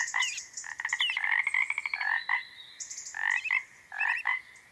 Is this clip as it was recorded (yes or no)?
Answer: yes